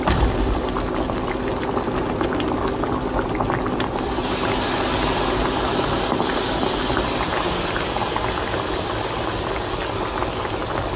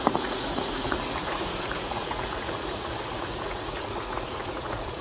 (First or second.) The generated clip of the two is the second